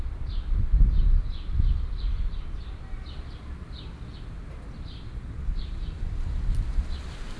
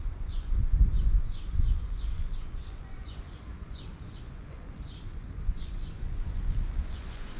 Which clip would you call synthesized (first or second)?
second